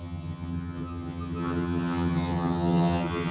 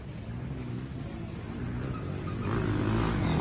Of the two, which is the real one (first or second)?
second